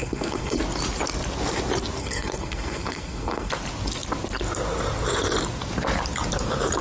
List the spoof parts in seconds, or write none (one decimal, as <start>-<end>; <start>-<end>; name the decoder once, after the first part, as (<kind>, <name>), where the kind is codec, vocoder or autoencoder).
0.0-0.6 (codec, SNAC); 2.0-3.5